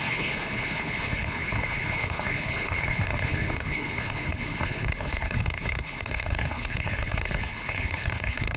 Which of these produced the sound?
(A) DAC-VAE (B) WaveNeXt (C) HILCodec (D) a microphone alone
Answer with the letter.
C